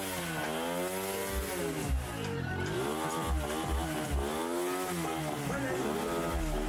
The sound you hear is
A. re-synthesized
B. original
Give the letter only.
B